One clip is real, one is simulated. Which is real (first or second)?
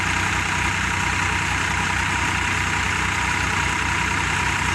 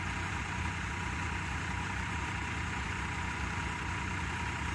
first